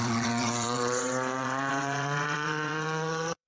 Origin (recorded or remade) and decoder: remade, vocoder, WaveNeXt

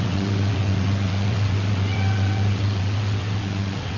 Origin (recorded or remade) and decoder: remade, vocoder, WaveNeXt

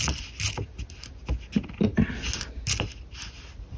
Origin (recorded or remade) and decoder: recorded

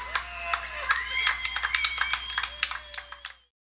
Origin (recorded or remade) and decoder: recorded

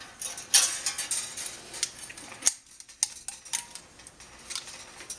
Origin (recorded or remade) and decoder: recorded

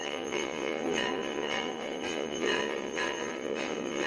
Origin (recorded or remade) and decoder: remade, vocoder, WaveNeXt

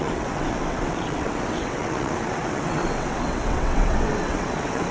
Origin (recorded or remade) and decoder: remade, vocoder, WaveNeXt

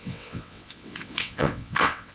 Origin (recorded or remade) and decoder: remade, vocoder, WaveNeXt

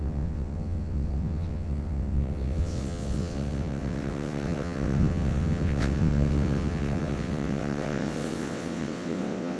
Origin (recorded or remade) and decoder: remade, vocoder, WaveNeXt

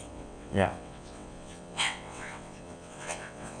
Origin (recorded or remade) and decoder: remade, vocoder, WaveNeXt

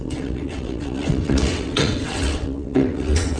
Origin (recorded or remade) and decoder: remade, vocoder, WaveNeXt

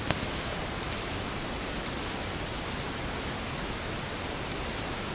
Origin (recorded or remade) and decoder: recorded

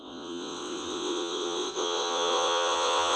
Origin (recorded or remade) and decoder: remade, vocoder, WaveNeXt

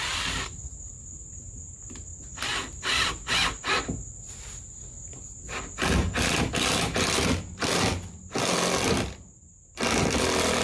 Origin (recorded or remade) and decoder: recorded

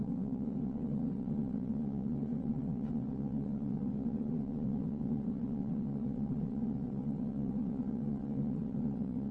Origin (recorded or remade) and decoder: remade, vocoder, WaveNeXt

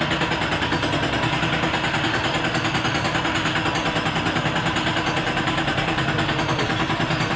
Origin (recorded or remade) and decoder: recorded